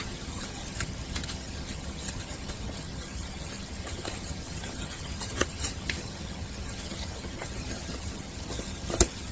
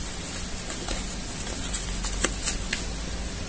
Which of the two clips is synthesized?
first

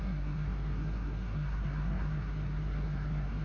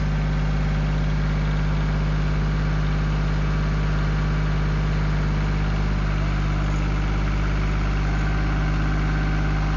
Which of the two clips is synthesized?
first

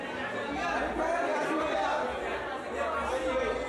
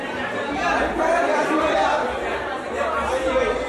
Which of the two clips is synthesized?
second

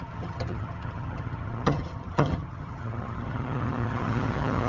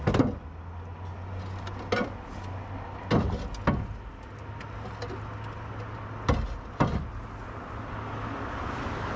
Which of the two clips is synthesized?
first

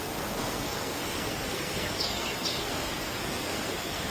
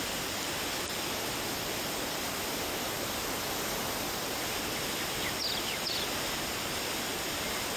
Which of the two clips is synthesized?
first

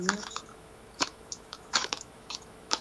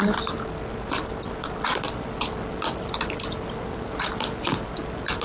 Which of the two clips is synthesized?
first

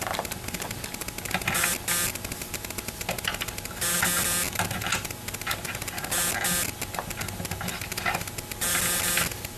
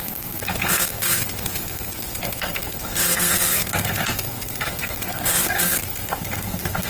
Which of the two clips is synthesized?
second